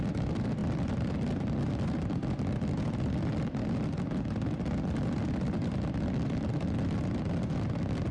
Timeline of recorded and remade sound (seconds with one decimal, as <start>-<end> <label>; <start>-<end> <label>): 0.0-8.1 recorded